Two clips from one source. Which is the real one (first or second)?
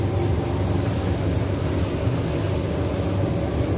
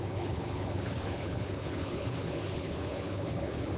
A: first